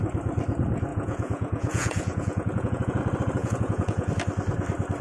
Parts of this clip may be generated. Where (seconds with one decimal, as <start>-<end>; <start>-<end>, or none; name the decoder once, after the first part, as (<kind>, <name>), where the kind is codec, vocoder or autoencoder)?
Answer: 0.9-3.0 (vocoder, Vocos); 3.4-4.1